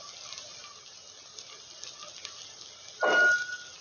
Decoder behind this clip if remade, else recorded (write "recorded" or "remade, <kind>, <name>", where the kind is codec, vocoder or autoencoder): recorded